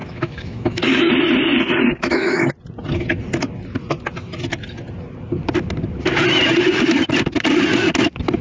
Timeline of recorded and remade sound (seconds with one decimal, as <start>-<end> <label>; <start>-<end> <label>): 0.0-1.1 remade; 1.1-2.0 recorded; 2.0-2.5 remade; 2.5-8.4 recorded